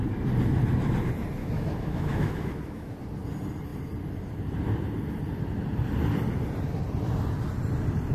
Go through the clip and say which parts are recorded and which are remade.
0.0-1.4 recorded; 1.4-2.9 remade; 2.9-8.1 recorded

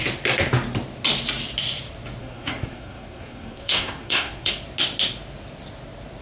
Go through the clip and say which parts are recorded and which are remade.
0.0-2.2 recorded; 2.2-4.5 remade; 4.5-6.2 recorded

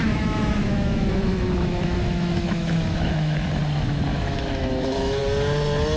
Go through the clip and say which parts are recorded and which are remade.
0.0-3.6 remade; 3.6-4.1 recorded; 4.1-5.2 remade; 5.2-6.0 recorded

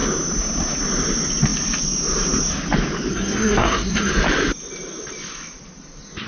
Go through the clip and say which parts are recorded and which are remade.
0.0-3.1 recorded; 3.1-4.1 remade; 4.1-6.3 recorded

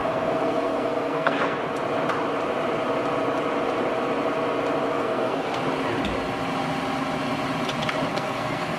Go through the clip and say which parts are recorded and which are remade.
0.0-1.6 remade; 1.6-4.9 recorded; 4.9-5.6 remade; 5.6-8.1 recorded; 8.1-8.8 remade

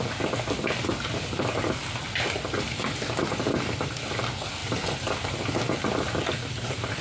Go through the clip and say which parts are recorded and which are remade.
0.0-7.0 recorded

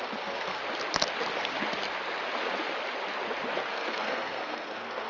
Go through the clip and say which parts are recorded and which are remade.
0.0-0.6 remade; 0.6-3.7 recorded; 3.7-5.1 remade